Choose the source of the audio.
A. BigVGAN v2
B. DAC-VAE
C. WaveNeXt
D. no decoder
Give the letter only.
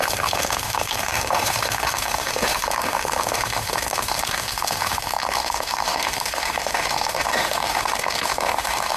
B